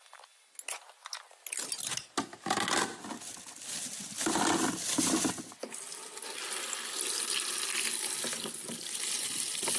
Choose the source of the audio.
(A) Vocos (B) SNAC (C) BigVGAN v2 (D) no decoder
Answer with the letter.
D